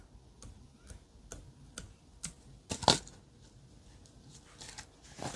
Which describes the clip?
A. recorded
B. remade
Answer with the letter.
A